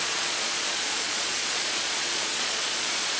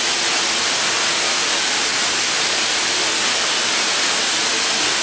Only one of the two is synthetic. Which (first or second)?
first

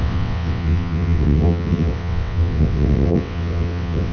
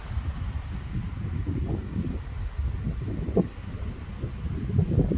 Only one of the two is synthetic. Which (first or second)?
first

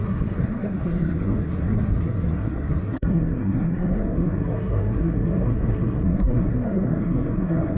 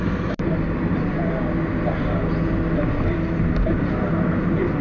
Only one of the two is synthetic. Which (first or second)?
first